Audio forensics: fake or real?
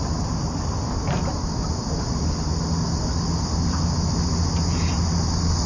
real